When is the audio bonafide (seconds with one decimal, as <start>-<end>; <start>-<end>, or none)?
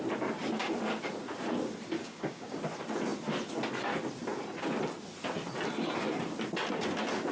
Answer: 0.0-2.0; 2.6-7.3